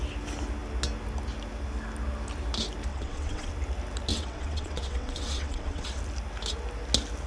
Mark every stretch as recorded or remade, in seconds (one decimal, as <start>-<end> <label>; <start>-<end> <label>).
0.0-2.9 recorded; 2.9-3.5 remade; 3.5-4.1 recorded; 4.1-6.0 remade; 6.0-7.3 recorded